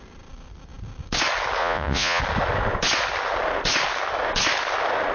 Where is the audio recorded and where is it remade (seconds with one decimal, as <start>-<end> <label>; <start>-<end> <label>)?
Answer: 0.0-1.6 recorded; 1.6-2.2 remade; 2.2-5.1 recorded